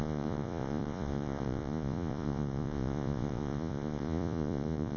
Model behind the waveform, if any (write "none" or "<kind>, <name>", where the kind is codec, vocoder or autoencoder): vocoder, Vocos